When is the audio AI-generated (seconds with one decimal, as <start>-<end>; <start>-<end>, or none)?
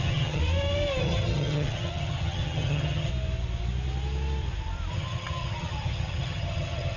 0.0-0.4; 1.0-3.1; 4.9-7.0